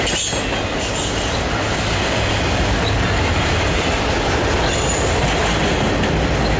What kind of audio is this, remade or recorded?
recorded